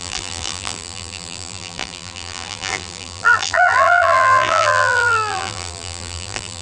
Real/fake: fake